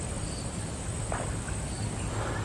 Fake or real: real